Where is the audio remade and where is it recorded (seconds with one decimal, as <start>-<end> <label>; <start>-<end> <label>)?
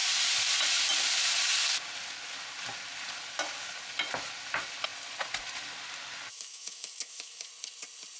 0.0-6.3 recorded; 6.3-7.5 remade; 7.5-8.2 recorded